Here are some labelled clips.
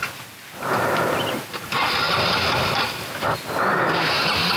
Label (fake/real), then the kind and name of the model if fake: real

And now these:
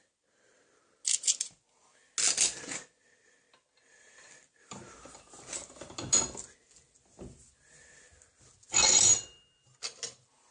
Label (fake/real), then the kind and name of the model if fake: real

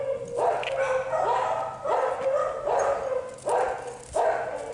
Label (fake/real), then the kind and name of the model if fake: real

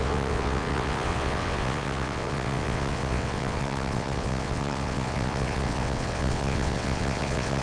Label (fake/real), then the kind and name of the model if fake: fake, vocoder, WaveNeXt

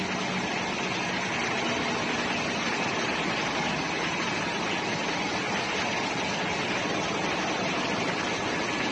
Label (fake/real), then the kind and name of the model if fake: real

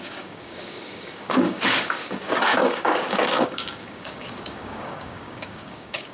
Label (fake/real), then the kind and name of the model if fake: fake, codec, DAC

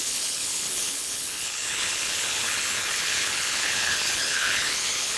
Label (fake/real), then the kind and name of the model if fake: fake, codec, HILCodec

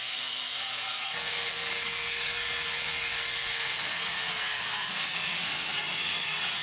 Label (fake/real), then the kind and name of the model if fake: fake, codec, SNAC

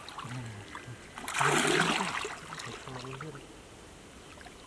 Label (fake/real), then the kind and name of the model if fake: real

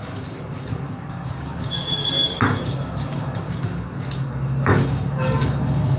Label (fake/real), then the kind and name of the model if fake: fake, codec, DAC